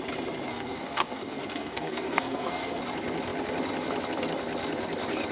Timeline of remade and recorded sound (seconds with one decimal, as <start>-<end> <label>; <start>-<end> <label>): 0.0-0.5 recorded; 0.5-2.8 remade; 2.8-5.3 recorded